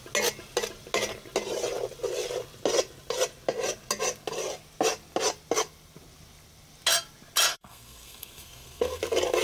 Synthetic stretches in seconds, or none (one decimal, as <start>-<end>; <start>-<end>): 7.5-9.0